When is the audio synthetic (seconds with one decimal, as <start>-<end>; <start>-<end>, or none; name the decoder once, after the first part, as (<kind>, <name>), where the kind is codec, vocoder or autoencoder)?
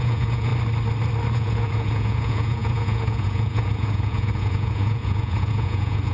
0.0-0.5 (vocoder, Vocos); 1.3-6.1